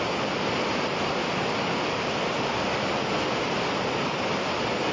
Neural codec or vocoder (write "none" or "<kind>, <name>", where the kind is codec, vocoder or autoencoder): none